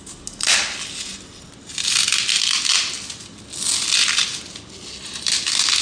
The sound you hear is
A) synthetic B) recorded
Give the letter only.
B